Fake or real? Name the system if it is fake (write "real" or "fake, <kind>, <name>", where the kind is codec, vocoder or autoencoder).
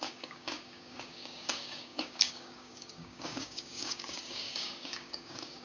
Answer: fake, codec, DAC